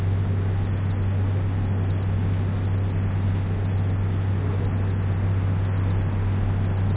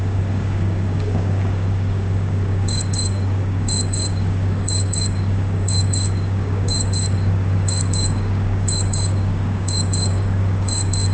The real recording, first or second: first